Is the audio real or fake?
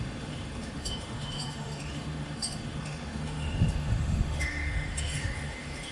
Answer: fake